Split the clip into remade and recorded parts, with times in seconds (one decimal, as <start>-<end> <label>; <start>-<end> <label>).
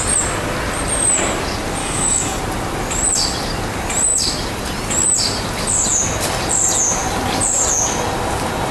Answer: 0.0-1.8 recorded; 1.8-2.4 remade; 2.4-8.7 recorded